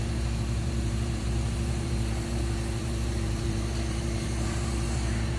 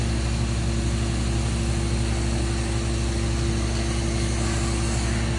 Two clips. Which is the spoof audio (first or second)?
first